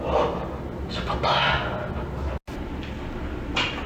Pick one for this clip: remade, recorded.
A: recorded